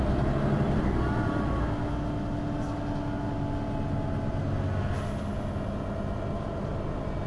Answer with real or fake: real